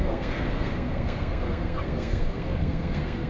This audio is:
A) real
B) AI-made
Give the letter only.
B